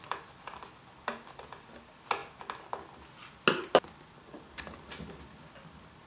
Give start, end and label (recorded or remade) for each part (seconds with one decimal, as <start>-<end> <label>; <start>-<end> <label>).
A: 0.0-6.1 recorded